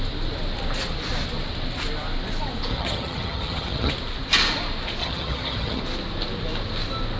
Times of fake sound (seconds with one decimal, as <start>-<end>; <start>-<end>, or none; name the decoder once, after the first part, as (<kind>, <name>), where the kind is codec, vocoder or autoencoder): 2.7-3.9 (vocoder, HiFi-GAN); 5.0-5.8